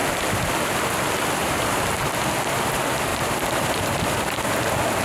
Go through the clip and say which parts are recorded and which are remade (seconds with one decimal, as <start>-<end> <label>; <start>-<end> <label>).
0.0-1.4 recorded; 1.4-2.3 remade; 2.3-3.1 recorded; 3.1-4.6 remade; 4.6-5.0 recorded